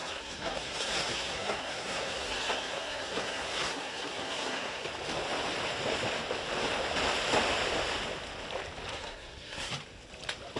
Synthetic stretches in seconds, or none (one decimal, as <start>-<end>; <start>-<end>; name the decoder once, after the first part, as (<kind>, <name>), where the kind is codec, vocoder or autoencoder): 0.0-4.9 (codec, SNAC); 8.9-9.7